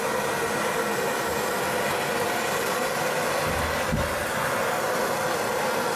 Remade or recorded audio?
recorded